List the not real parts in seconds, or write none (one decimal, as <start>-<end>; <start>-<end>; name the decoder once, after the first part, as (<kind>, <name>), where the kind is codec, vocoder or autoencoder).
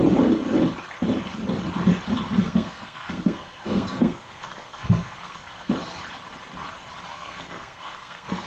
2.4-5.7 (codec, SNAC); 7.1-8.5